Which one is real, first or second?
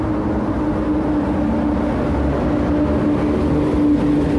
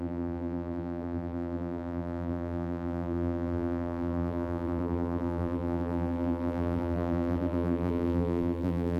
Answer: first